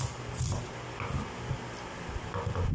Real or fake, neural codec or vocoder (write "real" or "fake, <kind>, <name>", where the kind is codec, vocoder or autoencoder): real